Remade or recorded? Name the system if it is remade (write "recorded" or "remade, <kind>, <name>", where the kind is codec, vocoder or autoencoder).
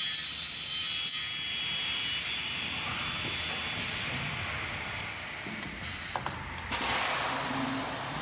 recorded